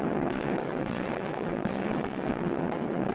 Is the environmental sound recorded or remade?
remade